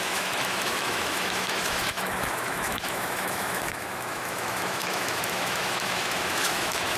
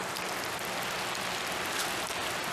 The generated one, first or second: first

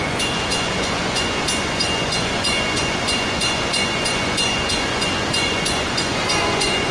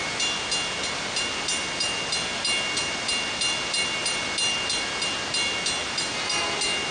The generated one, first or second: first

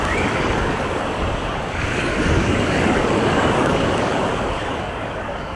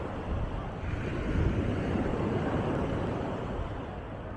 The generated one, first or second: first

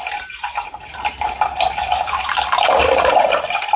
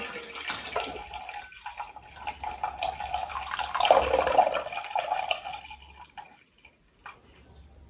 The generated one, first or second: first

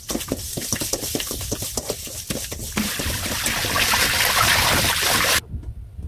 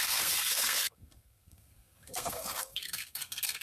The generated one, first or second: second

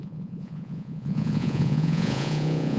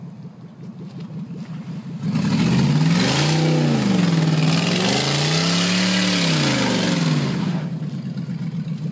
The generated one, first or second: first